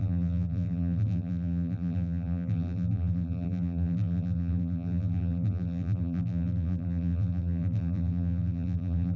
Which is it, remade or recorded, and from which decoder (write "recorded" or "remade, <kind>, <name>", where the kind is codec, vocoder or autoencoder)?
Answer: remade, vocoder, BigVGAN v2